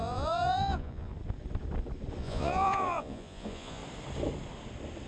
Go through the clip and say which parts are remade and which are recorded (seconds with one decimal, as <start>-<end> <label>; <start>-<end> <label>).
0.0-1.1 remade; 1.1-2.2 recorded; 2.2-3.8 remade; 3.8-5.1 recorded

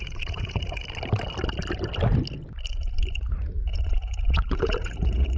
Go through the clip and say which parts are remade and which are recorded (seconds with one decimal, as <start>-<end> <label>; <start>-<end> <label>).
0.0-0.8 remade; 0.8-2.7 recorded; 2.7-5.4 remade

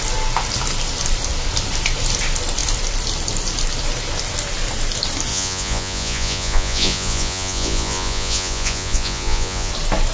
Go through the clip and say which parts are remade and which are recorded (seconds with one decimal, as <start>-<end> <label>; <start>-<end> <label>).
0.0-5.3 recorded; 5.3-9.7 remade; 9.7-10.1 recorded

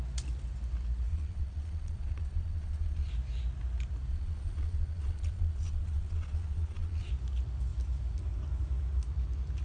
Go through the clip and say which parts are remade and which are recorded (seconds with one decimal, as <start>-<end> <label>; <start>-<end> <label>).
0.0-1.1 recorded; 1.1-3.1 remade; 3.1-4.1 recorded; 4.1-7.1 remade; 7.1-9.6 recorded

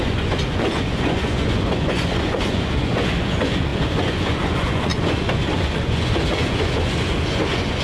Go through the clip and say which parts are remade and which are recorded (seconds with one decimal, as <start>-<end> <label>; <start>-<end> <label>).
0.0-7.8 remade

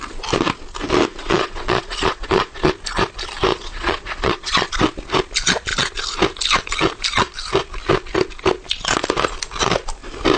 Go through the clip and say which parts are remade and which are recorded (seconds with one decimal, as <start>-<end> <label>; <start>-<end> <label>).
0.0-1.1 recorded; 1.1-2.7 remade; 2.7-3.5 recorded; 3.5-4.7 remade; 4.7-10.4 recorded